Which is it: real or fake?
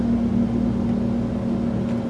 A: real